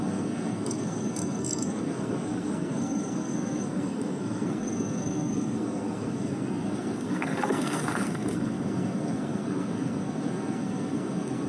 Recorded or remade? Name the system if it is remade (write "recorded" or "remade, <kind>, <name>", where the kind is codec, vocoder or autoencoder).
remade, codec, SNAC